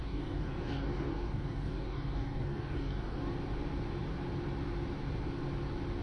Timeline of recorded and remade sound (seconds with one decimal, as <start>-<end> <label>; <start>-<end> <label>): 0.0-3.2 remade; 3.2-6.0 recorded